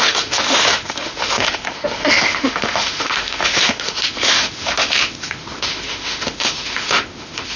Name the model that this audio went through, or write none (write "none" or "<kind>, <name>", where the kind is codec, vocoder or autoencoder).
autoencoder, DAC-VAE